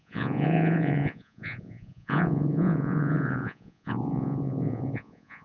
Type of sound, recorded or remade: remade